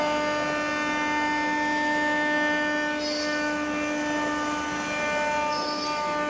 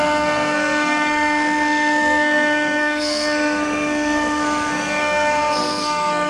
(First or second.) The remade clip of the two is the second